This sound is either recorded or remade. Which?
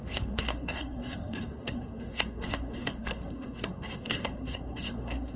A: remade